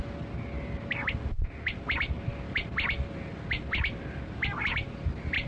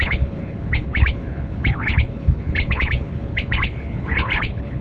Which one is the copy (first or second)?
second